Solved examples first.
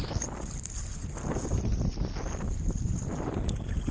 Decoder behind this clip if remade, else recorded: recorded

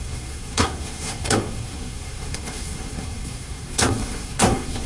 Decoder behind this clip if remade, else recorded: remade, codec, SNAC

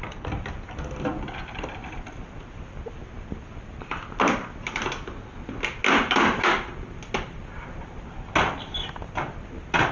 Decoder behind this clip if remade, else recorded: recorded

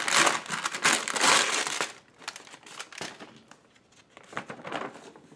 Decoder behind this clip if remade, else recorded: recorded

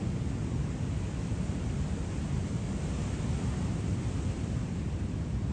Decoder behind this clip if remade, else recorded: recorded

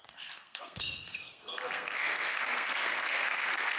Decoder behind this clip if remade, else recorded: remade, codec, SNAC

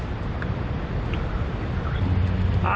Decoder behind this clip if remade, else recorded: recorded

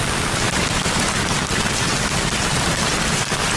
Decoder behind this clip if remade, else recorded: recorded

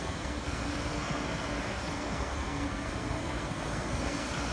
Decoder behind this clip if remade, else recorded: remade, codec, SNAC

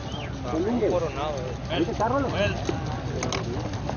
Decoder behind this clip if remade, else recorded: recorded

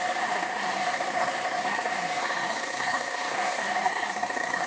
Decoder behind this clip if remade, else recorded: remade, codec, SNAC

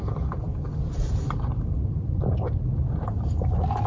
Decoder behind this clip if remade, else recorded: recorded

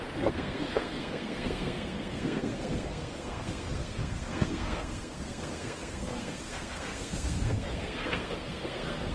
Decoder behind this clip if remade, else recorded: remade, codec, SNAC